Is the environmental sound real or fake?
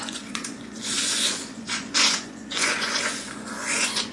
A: fake